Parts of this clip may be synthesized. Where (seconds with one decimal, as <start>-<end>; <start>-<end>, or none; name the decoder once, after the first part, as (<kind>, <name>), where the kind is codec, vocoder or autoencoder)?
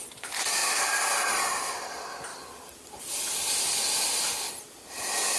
0.0-0.6 (vocoder, BigVGAN v2); 1.7-5.4